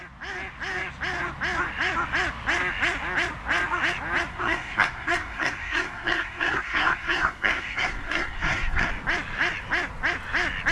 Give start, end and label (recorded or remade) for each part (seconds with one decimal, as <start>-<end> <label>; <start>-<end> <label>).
0.0-4.3 recorded; 4.3-8.9 remade; 8.9-10.7 recorded